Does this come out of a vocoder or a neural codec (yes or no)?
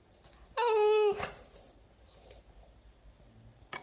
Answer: no